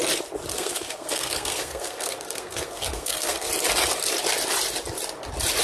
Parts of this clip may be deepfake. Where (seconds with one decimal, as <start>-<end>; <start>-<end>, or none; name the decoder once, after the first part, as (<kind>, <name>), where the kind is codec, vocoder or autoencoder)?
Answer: 0.5-3.5 (codec, SNAC)